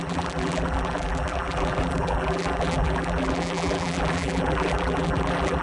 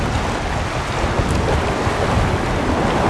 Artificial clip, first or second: first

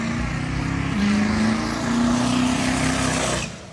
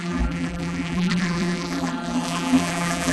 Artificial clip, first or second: second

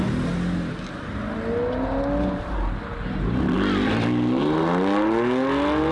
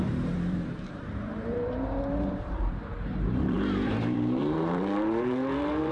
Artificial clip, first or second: second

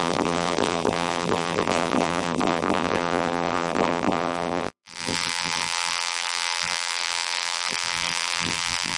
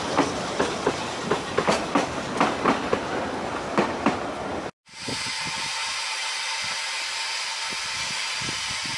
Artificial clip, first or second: first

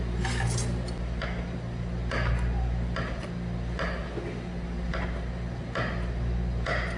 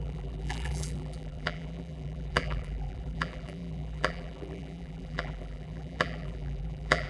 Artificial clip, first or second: second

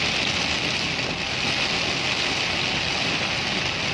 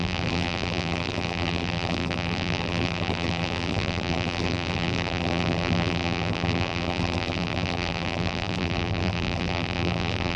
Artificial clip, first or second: second